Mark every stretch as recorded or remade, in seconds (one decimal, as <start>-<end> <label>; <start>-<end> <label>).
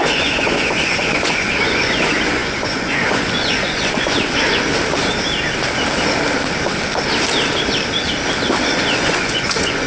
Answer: 0.0-4.7 remade; 4.7-8.6 recorded; 8.6-9.9 remade